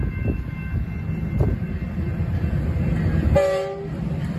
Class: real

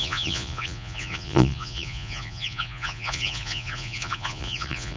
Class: fake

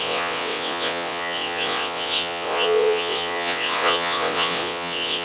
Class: fake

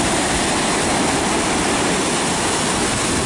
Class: real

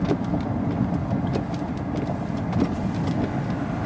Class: real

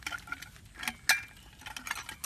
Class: real